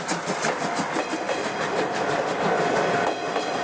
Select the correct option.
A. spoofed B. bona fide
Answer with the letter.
B